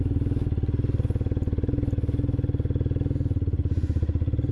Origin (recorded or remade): recorded